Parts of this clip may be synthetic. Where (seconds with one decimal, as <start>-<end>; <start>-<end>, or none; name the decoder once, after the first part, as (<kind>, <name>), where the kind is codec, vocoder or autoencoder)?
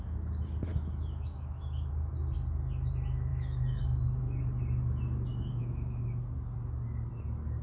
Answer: 0.7-1.9 (autoencoder, DAC-VAE); 3.3-3.8; 5.3-6.0